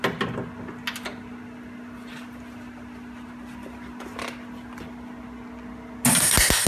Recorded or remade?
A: recorded